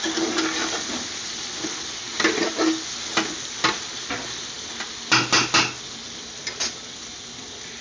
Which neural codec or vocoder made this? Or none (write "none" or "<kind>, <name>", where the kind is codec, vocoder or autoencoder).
none